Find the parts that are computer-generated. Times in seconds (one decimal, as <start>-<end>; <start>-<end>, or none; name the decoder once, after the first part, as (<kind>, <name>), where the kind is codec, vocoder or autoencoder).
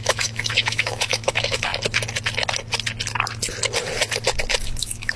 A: 0.0-1.7 (autoencoder, DAC-VAE); 4.8-5.2